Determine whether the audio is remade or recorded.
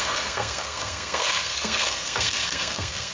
remade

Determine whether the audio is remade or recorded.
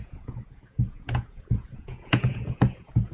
remade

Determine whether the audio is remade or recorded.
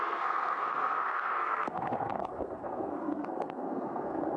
remade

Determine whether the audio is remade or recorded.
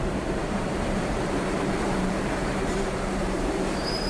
remade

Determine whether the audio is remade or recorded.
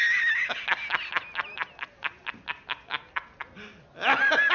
recorded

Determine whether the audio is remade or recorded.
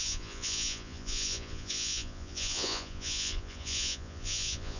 remade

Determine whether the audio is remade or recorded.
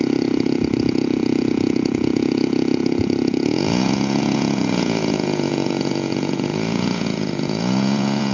remade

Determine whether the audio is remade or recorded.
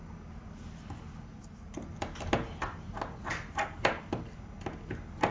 recorded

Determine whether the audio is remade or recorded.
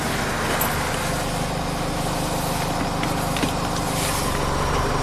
recorded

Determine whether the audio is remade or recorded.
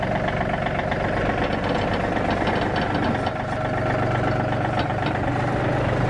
recorded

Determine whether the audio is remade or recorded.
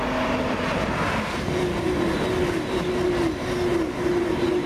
recorded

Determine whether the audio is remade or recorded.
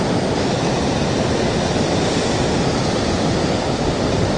recorded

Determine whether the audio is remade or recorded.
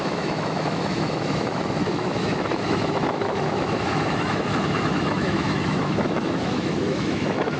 remade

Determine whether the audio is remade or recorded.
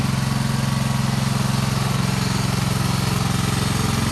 recorded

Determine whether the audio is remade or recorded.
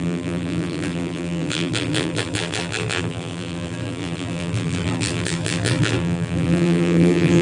remade